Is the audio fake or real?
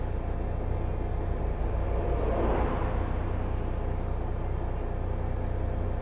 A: real